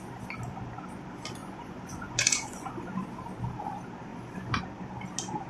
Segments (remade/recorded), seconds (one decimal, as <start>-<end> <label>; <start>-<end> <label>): 0.0-1.4 recorded; 1.4-2.7 remade; 2.7-4.1 recorded; 4.1-4.6 remade; 4.6-5.5 recorded